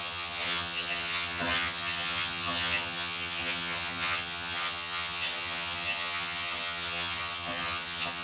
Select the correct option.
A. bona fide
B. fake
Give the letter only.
B